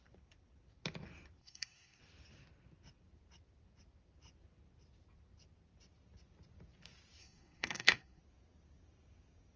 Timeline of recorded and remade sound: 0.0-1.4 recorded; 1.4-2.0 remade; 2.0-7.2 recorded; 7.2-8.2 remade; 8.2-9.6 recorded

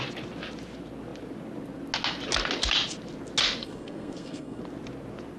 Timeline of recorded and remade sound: 0.0-3.6 recorded; 3.6-4.6 remade; 4.6-5.4 recorded